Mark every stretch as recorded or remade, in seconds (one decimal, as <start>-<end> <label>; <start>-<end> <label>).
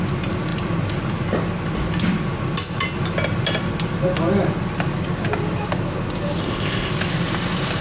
0.0-6.4 recorded; 6.4-6.9 remade; 6.9-7.8 recorded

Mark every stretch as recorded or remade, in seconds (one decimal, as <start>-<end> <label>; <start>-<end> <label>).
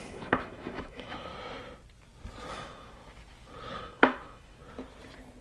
0.0-1.3 remade; 1.3-2.5 recorded; 2.5-3.0 remade; 3.0-3.8 recorded; 3.8-4.6 remade; 4.6-5.4 recorded